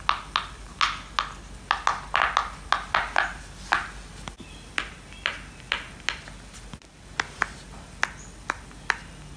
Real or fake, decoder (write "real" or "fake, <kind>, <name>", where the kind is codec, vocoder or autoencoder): real